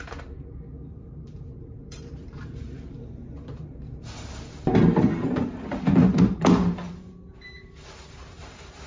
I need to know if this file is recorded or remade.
remade